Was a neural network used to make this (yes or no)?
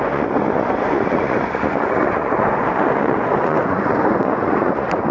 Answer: yes